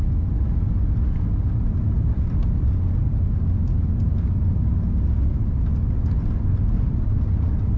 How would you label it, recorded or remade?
recorded